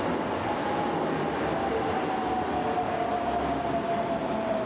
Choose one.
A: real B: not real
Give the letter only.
A